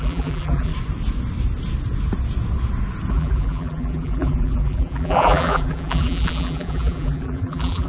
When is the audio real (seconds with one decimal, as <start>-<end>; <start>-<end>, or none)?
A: 0.7-3.1